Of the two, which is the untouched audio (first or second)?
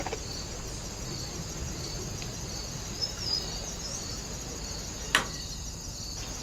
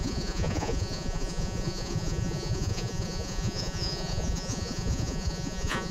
first